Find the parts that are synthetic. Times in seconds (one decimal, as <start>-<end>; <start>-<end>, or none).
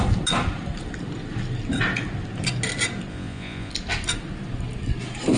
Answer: 3.1-3.7